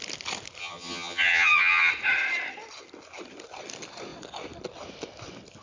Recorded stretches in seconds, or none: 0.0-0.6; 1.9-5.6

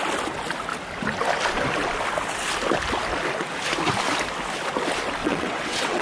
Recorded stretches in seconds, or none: 0.0-5.2

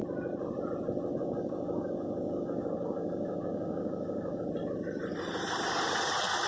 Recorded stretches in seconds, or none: 0.0-1.1; 4.4-6.5